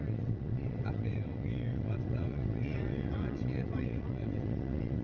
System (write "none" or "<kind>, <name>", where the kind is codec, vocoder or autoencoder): vocoder, WaveNeXt